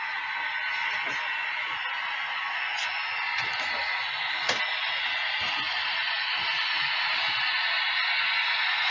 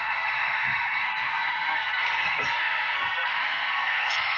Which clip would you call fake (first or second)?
second